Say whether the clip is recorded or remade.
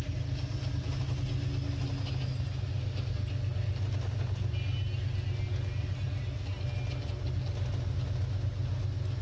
recorded